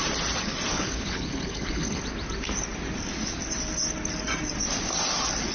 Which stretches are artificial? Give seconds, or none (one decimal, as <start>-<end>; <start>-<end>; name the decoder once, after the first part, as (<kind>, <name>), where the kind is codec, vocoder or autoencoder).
0.7-2.0 (codec, HILCodec)